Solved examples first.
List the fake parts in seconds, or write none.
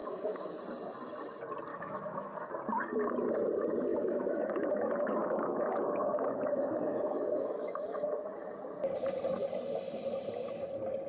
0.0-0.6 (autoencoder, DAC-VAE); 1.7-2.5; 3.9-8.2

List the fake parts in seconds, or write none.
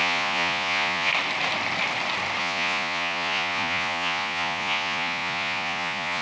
0.0-1.1 (vocoder, Vocos); 2.4-6.2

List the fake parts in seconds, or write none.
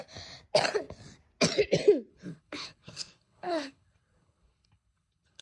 2.1-5.4 (codec, HILCodec)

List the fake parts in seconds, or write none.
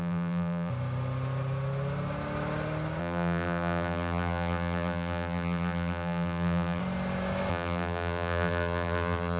0.0-0.7 (vocoder, BigVGAN v2); 3.0-6.8; 7.5-9.4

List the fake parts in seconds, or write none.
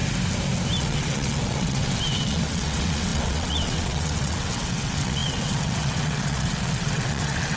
0.8-7.6 (vocoder, WaveNeXt)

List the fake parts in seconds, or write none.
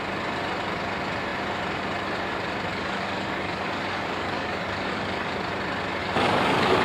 2.7-5.3 (codec, DAC); 6.0-6.8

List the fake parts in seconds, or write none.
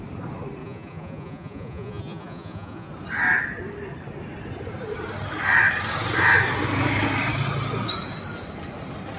0.6-2.9 (vocoder, Vocos)